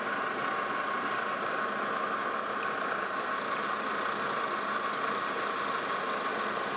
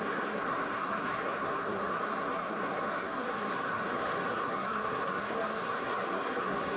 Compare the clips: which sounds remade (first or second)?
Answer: second